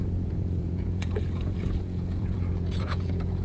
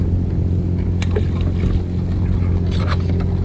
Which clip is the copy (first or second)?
first